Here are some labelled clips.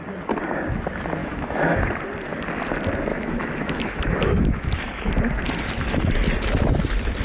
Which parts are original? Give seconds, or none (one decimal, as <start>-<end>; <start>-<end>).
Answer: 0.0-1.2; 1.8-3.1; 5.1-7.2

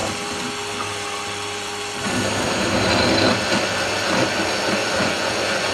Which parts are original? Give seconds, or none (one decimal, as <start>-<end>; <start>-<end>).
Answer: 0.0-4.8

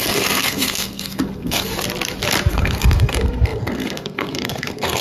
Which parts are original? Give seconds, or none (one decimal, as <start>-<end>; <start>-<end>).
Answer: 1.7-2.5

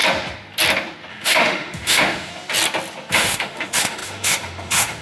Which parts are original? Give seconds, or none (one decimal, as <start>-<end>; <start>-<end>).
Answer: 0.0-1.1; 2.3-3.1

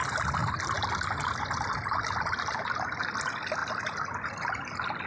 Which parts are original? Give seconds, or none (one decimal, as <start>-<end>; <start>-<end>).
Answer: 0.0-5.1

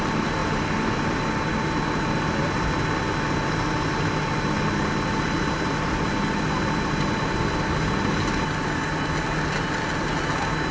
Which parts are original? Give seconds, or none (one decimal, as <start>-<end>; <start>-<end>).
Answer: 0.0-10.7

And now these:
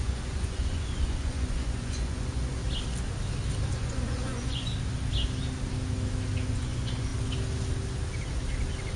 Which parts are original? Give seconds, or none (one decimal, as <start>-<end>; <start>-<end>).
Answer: 2.6-3.7; 4.7-6.5; 7.1-9.0